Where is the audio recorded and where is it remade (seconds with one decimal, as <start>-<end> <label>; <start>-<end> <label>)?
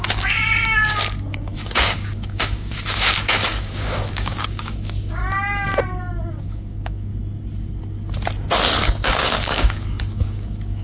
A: 0.0-5.2 remade; 5.2-6.3 recorded; 6.3-7.1 remade; 7.1-8.8 recorded; 8.8-10.8 remade